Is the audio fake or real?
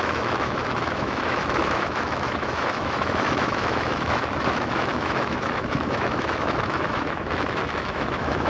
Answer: fake